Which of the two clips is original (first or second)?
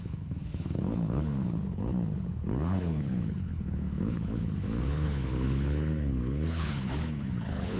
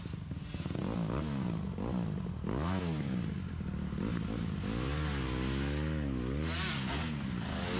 second